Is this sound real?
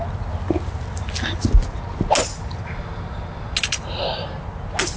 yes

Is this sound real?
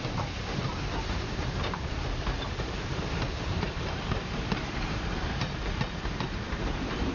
no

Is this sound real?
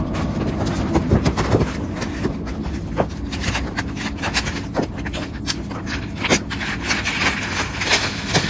yes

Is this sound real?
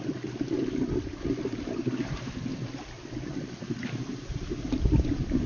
yes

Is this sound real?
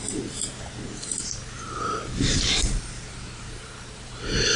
no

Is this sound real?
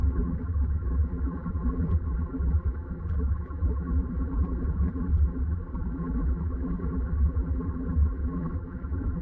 no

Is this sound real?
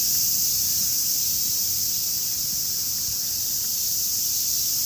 yes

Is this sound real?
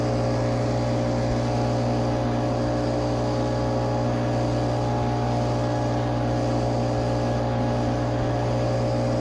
yes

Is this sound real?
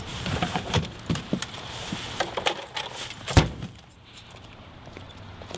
no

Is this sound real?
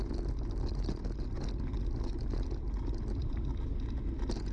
yes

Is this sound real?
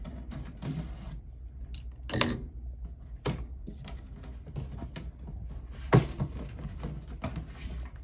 yes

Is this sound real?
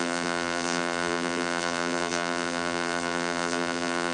no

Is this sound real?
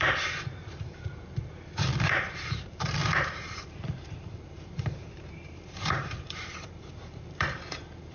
no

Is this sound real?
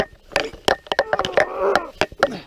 yes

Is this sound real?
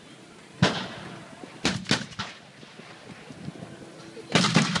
yes